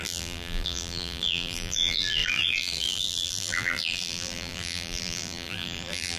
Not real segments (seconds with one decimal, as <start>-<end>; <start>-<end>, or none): 0.0-6.2